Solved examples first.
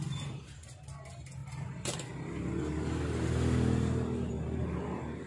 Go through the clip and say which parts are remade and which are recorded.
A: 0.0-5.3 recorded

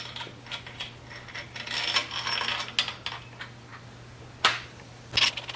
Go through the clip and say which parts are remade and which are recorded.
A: 0.0-5.6 recorded